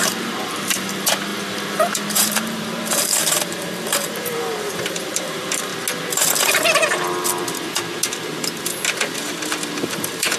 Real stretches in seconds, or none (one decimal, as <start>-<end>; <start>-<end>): 5.7-9.8